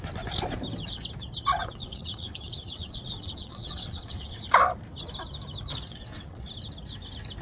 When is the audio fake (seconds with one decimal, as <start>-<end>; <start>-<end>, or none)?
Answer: 1.6-4.4; 5.7-6.5